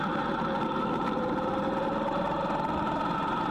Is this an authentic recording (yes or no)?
no